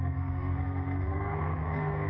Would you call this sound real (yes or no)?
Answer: no